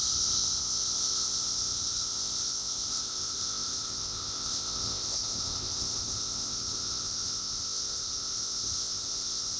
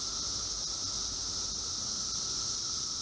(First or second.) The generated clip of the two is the first